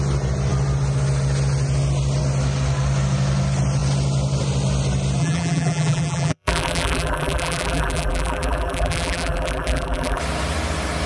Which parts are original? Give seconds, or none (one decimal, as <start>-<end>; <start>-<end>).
0.0-5.2; 10.2-11.1